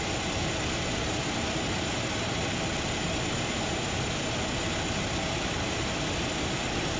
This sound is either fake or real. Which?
real